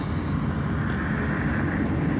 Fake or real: real